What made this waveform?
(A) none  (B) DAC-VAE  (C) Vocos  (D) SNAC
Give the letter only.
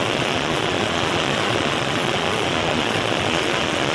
C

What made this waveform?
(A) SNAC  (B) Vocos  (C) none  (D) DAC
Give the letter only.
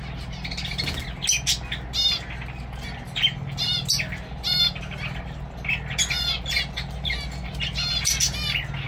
C